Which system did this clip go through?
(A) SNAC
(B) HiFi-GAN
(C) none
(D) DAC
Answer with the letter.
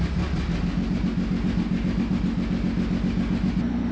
C